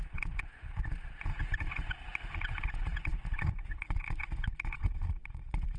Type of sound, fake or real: fake